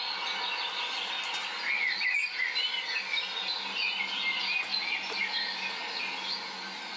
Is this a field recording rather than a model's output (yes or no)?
yes